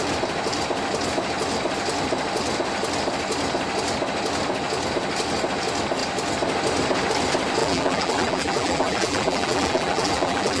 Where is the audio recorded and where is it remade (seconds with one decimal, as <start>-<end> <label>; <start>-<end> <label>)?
0.0-7.6 recorded; 7.6-10.6 remade